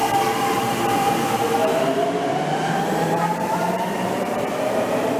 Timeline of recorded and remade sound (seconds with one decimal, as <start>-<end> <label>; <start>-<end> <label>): 0.0-0.6 remade; 0.6-1.6 recorded; 1.6-4.4 remade; 4.4-5.2 recorded